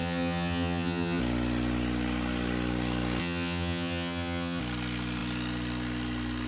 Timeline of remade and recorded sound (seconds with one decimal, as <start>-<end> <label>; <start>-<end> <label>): 0.0-1.2 remade; 1.2-3.2 recorded; 3.2-4.6 remade; 4.6-6.5 recorded

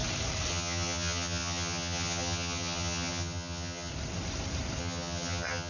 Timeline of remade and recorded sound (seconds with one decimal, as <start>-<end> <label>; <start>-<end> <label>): 0.0-0.5 recorded; 0.5-3.9 remade; 3.9-4.8 recorded; 4.8-5.7 remade